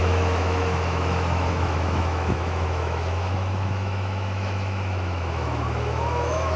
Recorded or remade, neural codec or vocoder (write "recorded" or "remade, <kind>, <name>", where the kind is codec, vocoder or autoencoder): remade, autoencoder, DAC-VAE